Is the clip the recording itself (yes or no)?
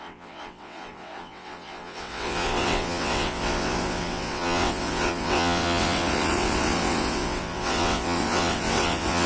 no